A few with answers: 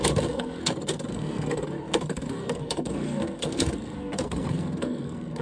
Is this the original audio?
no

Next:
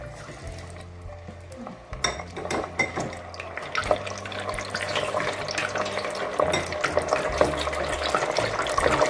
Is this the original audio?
yes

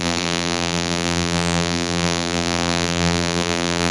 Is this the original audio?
no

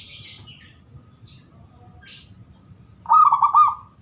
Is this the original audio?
yes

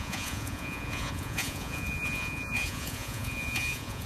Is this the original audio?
no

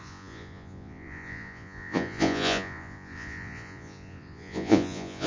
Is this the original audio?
no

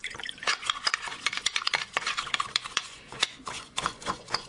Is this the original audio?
no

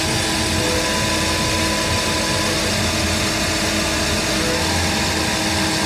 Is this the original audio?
yes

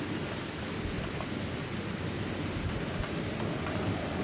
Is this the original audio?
yes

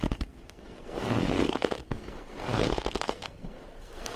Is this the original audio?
no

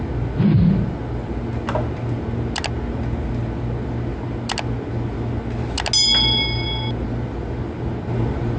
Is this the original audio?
yes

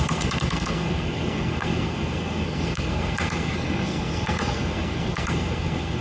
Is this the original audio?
no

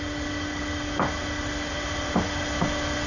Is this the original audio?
yes